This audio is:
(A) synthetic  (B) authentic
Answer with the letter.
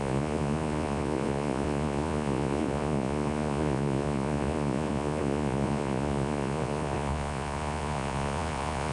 A